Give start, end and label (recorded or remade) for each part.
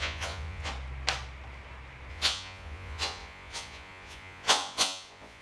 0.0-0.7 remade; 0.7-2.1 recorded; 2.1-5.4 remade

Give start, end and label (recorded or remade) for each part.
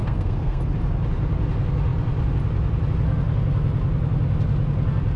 0.0-0.6 remade; 0.6-5.2 recorded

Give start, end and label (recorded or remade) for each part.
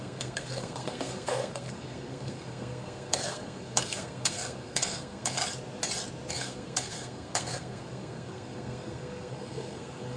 0.0-5.4 remade; 5.4-6.3 recorded; 6.3-10.2 remade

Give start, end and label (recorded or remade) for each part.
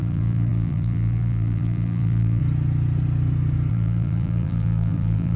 0.0-2.4 remade; 2.4-3.7 recorded; 3.7-5.4 remade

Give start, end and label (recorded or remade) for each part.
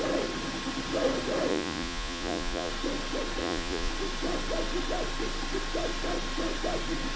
0.0-1.5 recorded; 1.5-2.7 remade; 2.7-3.4 recorded; 3.4-3.9 remade; 3.9-7.2 recorded